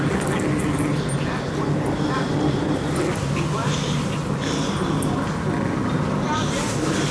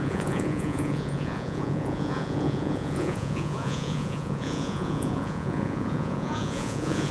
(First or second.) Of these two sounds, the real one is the first